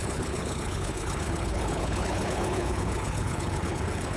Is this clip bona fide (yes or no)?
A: no